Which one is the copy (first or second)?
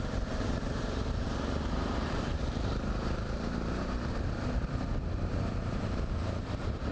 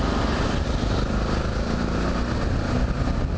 first